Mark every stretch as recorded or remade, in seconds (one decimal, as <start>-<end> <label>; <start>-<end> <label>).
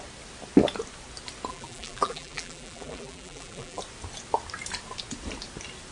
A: 0.0-1.5 recorded; 1.5-3.8 remade; 3.8-5.9 recorded